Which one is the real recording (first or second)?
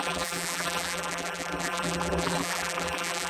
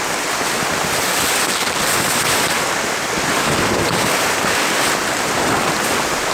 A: second